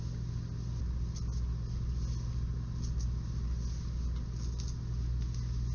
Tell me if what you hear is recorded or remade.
recorded